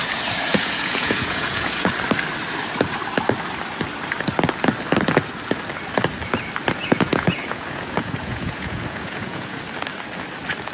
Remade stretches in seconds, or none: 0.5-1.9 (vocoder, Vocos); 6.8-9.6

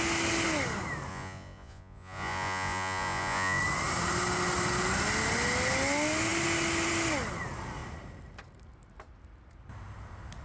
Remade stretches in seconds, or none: 1.1-3.6 (vocoder, Vocos)

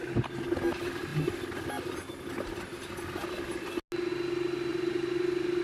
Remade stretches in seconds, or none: 4.7-5.6 (vocoder, BigVGAN v2)

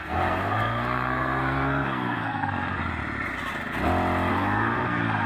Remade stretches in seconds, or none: 0.0-2.8 (codec, SNAC); 4.3-5.3

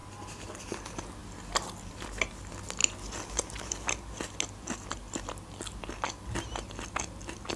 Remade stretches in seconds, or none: none

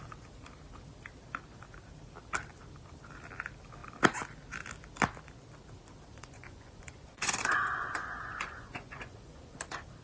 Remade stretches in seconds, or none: 6.1-9.6 (vocoder, Vocos)

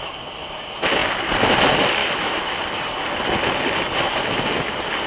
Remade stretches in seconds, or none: 2.0-2.6 (autoencoder, DAC-VAE)